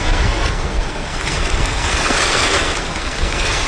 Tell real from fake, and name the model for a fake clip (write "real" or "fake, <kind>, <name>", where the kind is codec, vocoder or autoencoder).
fake, codec, SNAC